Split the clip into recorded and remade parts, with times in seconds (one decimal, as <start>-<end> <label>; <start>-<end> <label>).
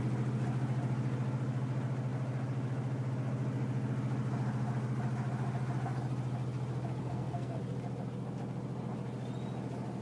0.0-7.0 recorded; 7.0-7.6 remade; 7.6-10.0 recorded